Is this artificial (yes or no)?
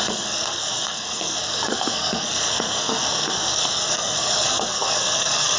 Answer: yes